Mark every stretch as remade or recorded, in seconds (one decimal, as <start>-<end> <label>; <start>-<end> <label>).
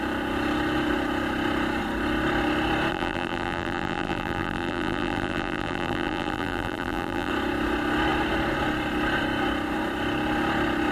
0.0-2.9 recorded; 2.9-7.3 remade; 7.3-10.9 recorded